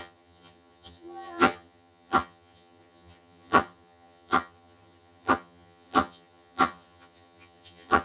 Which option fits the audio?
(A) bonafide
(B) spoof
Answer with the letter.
B